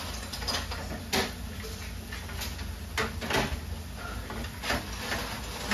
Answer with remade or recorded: recorded